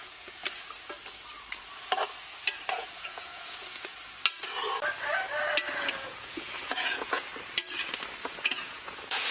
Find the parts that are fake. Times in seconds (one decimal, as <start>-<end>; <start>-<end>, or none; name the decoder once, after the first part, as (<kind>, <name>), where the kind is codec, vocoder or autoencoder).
0.0-0.4 (vocoder, Vocos); 2.7-3.9; 5.8-7.3; 8.3-9.3